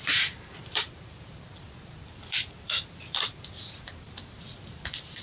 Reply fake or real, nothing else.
fake